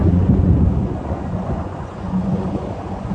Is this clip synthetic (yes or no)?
yes